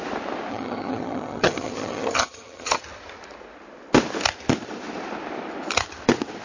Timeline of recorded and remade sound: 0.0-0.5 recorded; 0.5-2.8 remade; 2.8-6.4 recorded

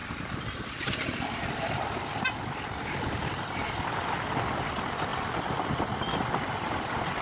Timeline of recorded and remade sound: 0.0-7.2 recorded

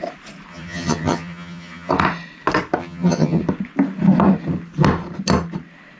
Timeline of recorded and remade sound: 0.0-0.5 recorded; 0.5-1.9 remade; 1.9-2.8 recorded; 2.8-3.4 remade; 3.4-6.0 recorded

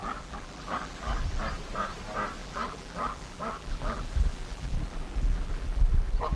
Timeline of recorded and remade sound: 0.0-1.4 remade; 1.4-2.4 recorded; 2.4-6.4 remade